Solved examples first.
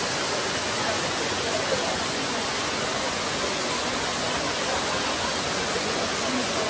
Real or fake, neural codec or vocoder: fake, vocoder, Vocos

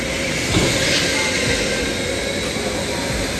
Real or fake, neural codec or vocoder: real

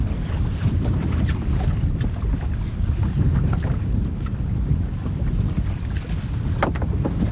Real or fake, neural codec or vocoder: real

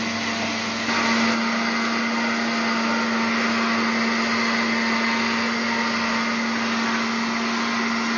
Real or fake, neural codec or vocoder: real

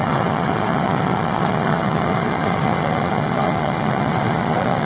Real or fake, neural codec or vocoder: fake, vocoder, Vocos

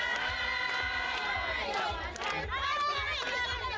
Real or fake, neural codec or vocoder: real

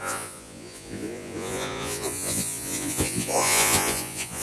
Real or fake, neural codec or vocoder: fake, vocoder, Vocos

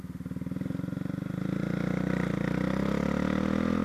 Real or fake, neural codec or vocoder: real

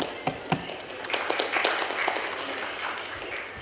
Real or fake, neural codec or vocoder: real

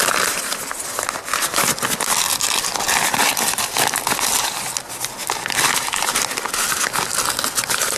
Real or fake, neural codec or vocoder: real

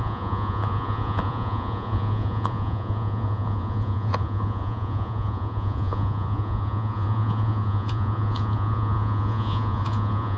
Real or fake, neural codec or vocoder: fake, vocoder, Vocos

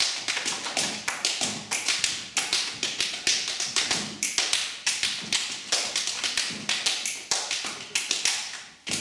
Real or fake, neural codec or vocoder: real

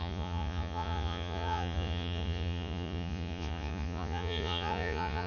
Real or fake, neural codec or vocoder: fake, vocoder, Vocos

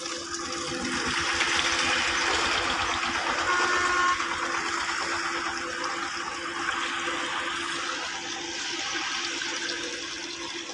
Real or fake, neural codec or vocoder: real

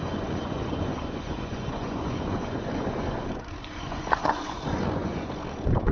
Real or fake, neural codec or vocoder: fake, vocoder, Vocos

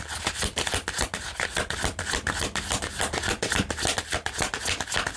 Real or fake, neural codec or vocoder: real